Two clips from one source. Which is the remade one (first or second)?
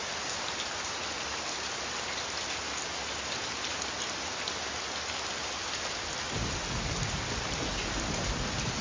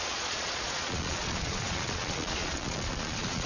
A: second